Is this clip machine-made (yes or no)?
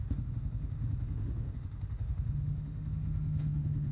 yes